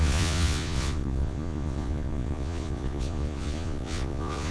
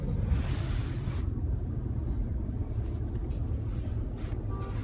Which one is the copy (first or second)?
first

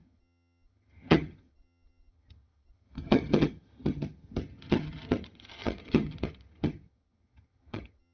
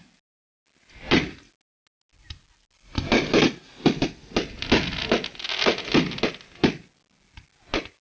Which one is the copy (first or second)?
first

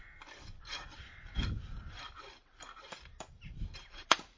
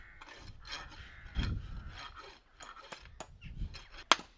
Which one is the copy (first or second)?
first